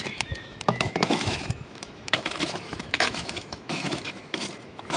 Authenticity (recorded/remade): remade